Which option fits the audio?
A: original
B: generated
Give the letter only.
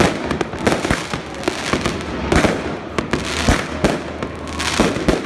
A